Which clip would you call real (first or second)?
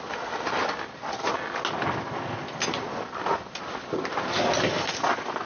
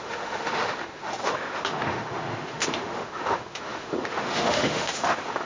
first